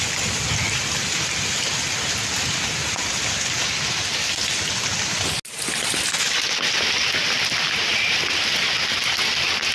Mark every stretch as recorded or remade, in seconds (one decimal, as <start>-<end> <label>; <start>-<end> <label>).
0.0-9.7 recorded

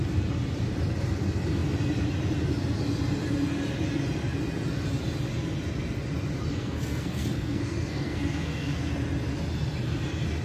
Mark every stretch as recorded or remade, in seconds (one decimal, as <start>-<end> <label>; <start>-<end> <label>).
0.0-6.5 recorded; 6.5-8.9 remade; 8.9-10.4 recorded

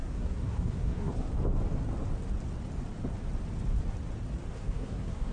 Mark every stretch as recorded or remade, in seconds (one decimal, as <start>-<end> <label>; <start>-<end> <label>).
0.0-1.3 remade; 1.3-4.5 recorded; 4.5-5.3 remade

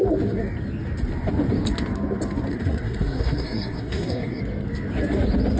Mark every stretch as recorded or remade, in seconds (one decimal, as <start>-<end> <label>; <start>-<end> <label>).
0.0-2.5 recorded; 2.5-4.4 remade; 4.4-5.6 recorded

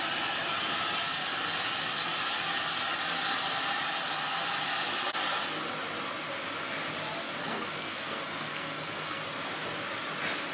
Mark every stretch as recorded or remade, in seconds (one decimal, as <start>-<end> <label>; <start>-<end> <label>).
0.0-7.4 recorded; 7.4-9.2 remade; 9.2-10.5 recorded